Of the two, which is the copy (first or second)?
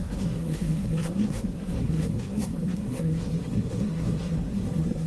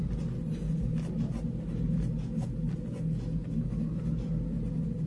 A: first